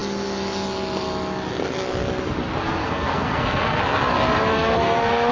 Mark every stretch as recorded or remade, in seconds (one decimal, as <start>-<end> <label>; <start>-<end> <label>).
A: 0.0-2.8 recorded; 2.8-3.8 remade; 3.8-4.5 recorded; 4.5-5.3 remade